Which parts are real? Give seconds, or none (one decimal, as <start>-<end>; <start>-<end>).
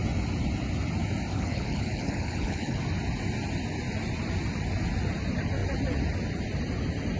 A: 0.0-1.3; 2.8-7.2